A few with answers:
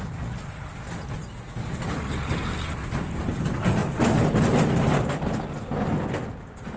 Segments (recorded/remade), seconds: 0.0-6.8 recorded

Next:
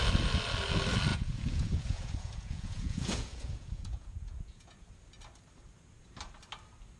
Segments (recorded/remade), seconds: 0.0-1.1 recorded; 1.1-4.9 remade; 4.9-7.0 recorded

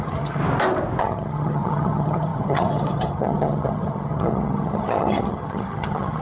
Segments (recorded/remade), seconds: 0.0-0.4 remade; 0.4-1.0 recorded; 1.0-6.2 remade

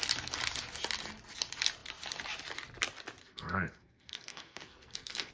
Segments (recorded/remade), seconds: 0.0-3.2 recorded; 3.2-5.3 remade

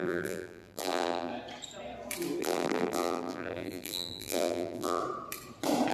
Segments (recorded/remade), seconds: 0.0-1.3 remade; 1.3-2.4 recorded; 2.4-5.0 remade; 5.0-5.9 recorded